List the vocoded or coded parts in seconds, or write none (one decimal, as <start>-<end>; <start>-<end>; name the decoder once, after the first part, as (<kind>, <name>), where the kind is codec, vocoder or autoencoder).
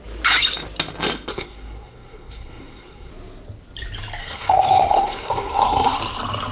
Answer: 1.3-3.1 (codec, SNAC); 4.2-6.0